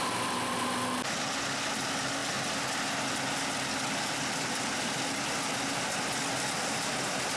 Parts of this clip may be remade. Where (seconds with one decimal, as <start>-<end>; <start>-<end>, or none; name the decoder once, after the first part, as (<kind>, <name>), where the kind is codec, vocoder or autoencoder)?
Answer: none